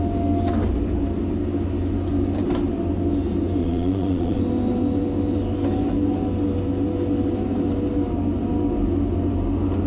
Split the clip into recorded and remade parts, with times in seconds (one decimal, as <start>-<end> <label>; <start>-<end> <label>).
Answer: 0.0-3.6 recorded; 3.6-4.4 remade; 4.4-9.9 recorded